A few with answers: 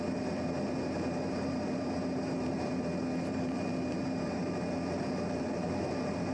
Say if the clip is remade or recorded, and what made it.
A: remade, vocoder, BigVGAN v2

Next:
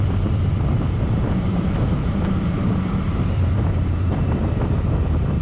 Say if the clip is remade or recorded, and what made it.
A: remade, vocoder, BigVGAN v2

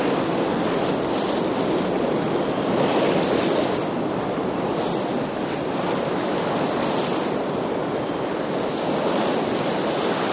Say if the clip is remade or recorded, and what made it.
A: recorded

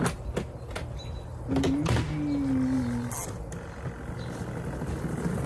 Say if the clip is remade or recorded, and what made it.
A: recorded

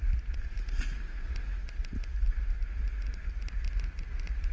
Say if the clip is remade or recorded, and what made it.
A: recorded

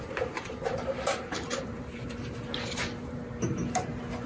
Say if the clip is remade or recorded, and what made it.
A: remade, vocoder, BigVGAN v2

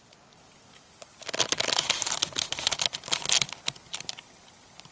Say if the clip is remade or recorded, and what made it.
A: recorded